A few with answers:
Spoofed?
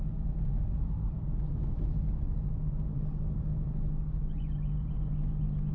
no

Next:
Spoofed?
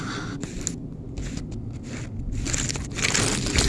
no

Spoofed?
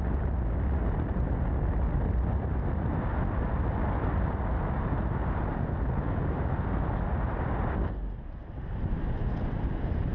no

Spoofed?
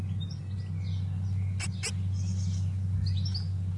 no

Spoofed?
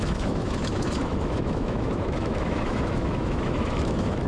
yes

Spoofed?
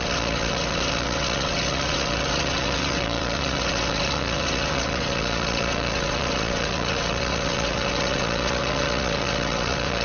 yes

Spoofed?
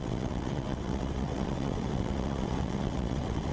yes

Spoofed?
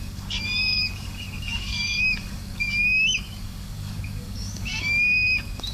yes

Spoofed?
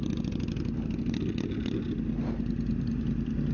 no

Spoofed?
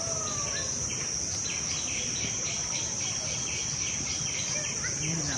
no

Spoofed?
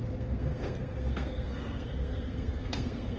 yes